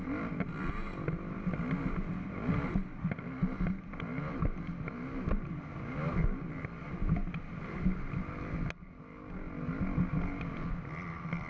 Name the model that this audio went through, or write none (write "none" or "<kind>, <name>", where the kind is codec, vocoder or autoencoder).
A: none